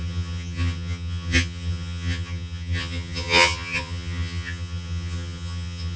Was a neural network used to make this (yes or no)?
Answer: yes